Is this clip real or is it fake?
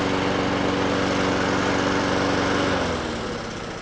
real